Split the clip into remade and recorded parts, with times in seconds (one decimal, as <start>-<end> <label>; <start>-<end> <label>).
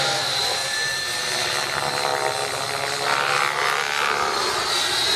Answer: 0.0-2.1 remade; 2.1-5.2 recorded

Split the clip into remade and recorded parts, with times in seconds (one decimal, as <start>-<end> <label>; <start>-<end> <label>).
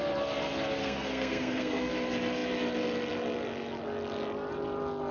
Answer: 0.0-0.8 recorded; 0.8-1.9 remade; 1.9-5.1 recorded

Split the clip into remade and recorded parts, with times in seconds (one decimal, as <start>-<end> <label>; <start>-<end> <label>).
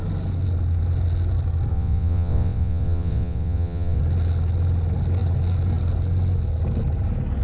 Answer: 0.0-1.7 recorded; 1.7-4.0 remade; 4.0-7.4 recorded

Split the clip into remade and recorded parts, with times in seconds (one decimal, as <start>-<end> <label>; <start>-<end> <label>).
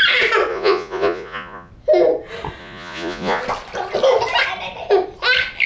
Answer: 0.0-0.5 recorded; 0.5-1.7 remade; 1.7-2.6 recorded; 2.6-3.4 remade; 3.4-5.7 recorded